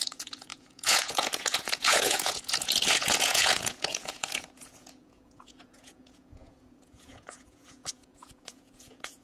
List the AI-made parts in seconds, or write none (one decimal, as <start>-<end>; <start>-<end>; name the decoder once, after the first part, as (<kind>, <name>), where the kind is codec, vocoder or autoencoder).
0.0-9.2 (vocoder, Vocos)